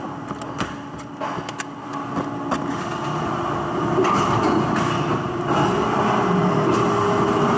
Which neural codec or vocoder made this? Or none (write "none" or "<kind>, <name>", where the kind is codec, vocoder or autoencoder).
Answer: none